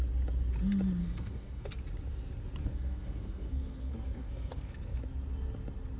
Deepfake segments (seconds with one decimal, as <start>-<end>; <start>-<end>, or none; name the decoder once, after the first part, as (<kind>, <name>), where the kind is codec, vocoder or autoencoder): 1.0-1.7 (codec, SNAC); 2.6-5.0